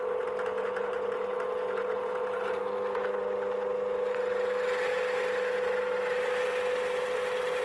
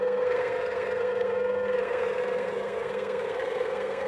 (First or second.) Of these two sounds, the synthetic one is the second